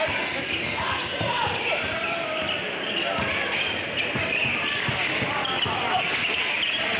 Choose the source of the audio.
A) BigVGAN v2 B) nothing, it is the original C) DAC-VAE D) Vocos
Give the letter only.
B